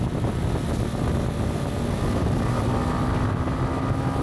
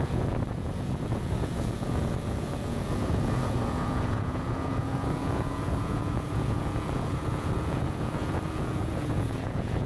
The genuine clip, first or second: first